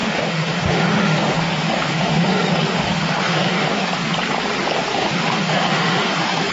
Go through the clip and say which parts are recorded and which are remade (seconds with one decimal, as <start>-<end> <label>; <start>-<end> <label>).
0.0-3.9 remade; 3.9-4.9 recorded; 4.9-6.5 remade